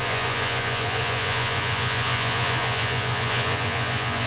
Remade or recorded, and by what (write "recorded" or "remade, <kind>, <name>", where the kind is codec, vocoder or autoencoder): remade, vocoder, Vocos